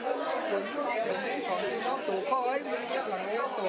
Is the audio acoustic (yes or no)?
no